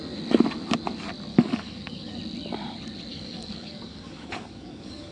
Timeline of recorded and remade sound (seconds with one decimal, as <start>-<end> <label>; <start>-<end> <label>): 0.0-1.3 recorded; 1.3-2.2 remade; 2.2-3.1 recorded; 3.1-5.1 remade